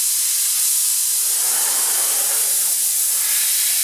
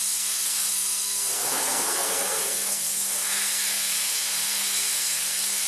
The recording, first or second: first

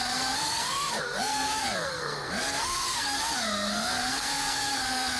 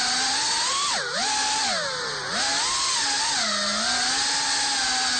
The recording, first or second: second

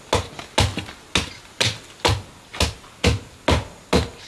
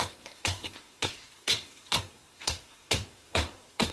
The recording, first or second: first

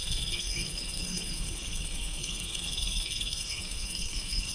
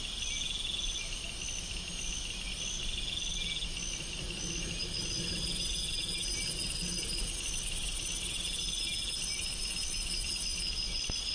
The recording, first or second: second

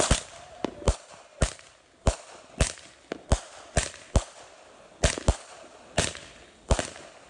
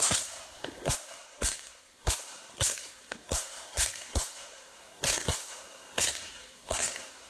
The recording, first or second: first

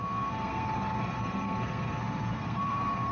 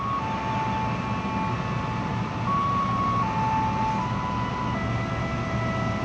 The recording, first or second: second